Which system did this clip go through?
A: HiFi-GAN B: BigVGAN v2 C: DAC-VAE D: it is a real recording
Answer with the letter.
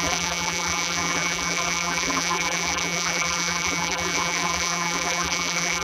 B